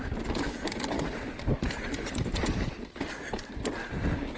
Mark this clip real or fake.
real